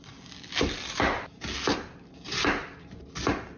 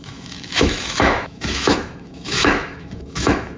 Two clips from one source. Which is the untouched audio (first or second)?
first